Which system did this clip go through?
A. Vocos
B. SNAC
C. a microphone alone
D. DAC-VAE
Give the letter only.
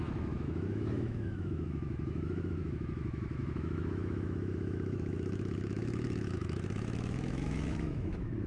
D